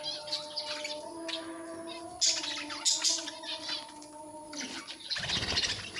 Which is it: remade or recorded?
recorded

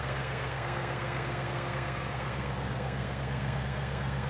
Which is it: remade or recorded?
remade